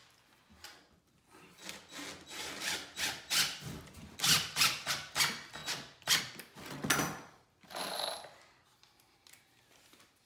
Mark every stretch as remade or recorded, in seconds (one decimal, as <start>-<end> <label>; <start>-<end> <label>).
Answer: 0.0-10.3 recorded